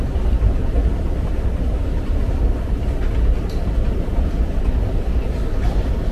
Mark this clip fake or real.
real